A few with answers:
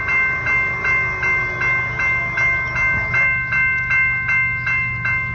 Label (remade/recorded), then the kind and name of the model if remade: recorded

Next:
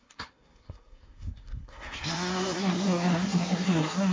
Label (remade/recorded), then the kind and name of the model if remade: remade, codec, SNAC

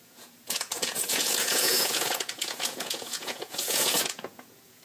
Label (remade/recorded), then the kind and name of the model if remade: remade, vocoder, Vocos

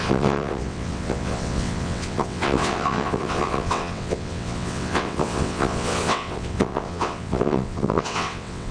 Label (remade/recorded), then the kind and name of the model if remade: remade, vocoder, WaveNeXt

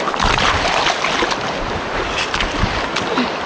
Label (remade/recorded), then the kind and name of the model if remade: recorded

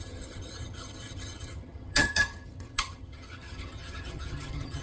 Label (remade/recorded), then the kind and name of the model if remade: remade, vocoder, HiFi-GAN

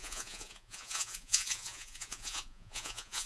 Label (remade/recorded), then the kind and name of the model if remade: remade, vocoder, Vocos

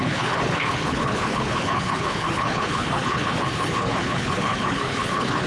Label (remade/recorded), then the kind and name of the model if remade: remade, codec, HILCodec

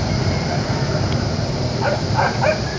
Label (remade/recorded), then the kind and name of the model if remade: remade, vocoder, BigVGAN v2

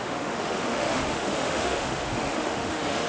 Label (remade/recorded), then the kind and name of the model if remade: remade, autoencoder, DAC-VAE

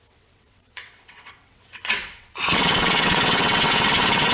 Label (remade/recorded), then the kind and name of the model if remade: remade, vocoder, WaveNeXt